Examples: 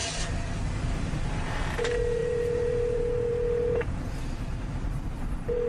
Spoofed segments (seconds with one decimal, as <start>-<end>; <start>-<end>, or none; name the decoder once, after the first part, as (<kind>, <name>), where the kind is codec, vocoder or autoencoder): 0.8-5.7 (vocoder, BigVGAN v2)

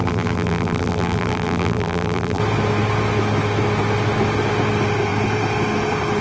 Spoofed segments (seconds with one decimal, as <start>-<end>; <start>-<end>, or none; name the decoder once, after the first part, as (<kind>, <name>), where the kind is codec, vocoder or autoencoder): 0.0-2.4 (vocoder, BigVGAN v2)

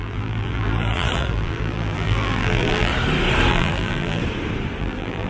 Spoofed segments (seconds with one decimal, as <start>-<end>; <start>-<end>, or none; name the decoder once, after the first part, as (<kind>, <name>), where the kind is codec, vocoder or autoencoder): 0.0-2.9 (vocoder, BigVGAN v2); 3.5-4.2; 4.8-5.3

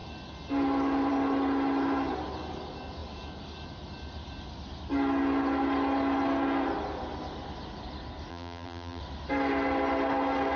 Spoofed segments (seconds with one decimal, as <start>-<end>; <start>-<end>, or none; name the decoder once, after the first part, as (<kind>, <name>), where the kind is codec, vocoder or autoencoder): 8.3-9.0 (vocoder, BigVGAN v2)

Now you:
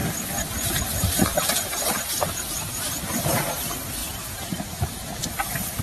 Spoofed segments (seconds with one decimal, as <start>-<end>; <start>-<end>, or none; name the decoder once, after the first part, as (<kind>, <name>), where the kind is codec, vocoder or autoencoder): 2.7-5.8 (vocoder, BigVGAN v2)

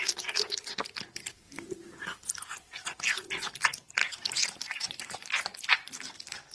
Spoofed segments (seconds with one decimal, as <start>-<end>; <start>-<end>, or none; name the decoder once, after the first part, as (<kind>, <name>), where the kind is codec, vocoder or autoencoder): 4.0-5.9 (vocoder, BigVGAN v2)